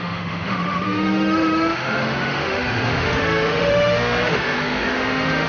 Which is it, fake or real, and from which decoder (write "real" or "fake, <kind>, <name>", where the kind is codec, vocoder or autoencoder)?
fake, autoencoder, DAC-VAE